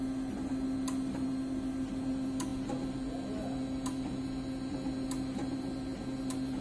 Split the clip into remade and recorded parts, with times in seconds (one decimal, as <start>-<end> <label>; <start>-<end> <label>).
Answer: 0.0-6.6 recorded